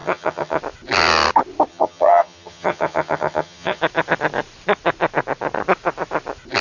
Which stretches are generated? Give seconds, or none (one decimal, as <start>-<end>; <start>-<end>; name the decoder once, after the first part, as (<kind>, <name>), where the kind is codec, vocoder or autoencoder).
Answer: 0.0-0.6 (vocoder, HiFi-GAN); 1.7-3.8